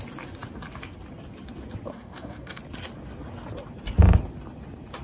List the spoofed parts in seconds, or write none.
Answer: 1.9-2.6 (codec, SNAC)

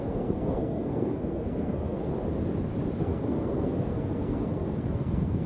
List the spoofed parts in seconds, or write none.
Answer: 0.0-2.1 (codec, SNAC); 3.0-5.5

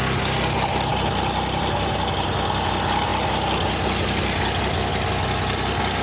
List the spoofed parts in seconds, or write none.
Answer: none

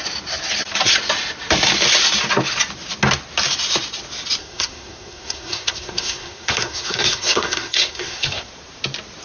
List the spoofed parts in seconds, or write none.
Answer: 4.4-8.5 (codec, SNAC)